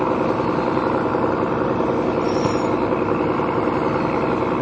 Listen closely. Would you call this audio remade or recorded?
recorded